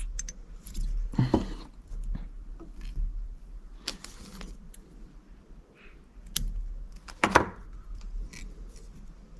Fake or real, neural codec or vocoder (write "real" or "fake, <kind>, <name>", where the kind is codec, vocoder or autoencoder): real